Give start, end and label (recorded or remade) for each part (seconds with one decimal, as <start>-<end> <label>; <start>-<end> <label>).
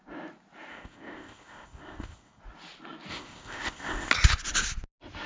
0.0-0.7 recorded; 0.7-2.4 remade; 2.4-3.1 recorded; 3.1-4.1 remade; 4.1-5.3 recorded